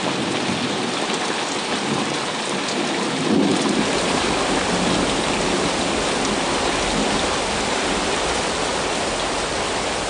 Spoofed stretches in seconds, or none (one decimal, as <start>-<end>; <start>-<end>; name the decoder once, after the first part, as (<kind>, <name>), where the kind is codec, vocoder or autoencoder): none